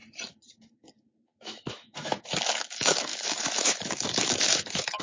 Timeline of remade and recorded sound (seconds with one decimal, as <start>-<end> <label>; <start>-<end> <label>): 0.0-0.7 recorded; 0.7-5.0 remade